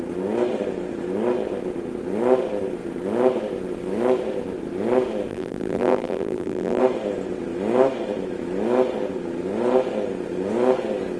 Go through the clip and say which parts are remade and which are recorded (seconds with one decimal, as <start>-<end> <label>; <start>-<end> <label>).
0.0-5.3 recorded; 5.3-6.8 remade; 6.8-11.2 recorded